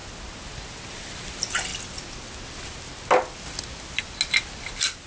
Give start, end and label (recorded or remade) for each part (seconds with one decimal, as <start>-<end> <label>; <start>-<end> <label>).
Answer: 0.0-5.1 recorded